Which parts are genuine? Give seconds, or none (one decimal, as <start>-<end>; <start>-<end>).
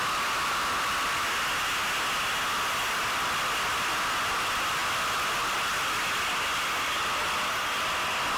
0.0-8.4